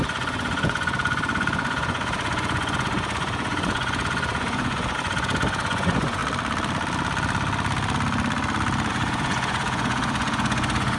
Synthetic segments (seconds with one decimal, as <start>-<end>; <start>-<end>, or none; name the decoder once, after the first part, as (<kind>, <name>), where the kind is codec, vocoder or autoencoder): 0.0-6.2 (vocoder, Vocos); 8.9-11.0